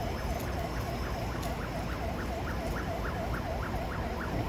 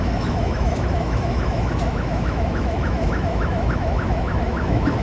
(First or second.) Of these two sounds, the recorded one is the first